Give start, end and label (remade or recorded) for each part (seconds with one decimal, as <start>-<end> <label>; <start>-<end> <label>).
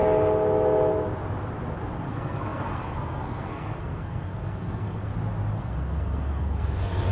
0.0-2.1 recorded; 2.1-5.1 remade; 5.1-5.6 recorded; 5.6-7.1 remade